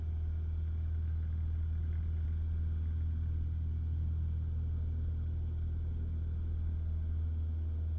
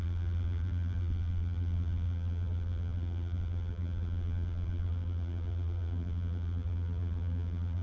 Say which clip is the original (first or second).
first